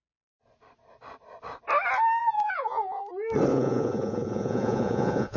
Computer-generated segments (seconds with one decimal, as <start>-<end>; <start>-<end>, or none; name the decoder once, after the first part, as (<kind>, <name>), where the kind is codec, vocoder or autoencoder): 2.2-3.0 (vocoder, Vocos); 3.5-5.4